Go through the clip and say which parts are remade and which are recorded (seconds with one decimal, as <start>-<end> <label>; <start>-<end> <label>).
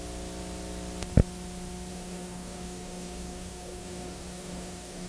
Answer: 0.0-1.9 recorded; 1.9-5.1 remade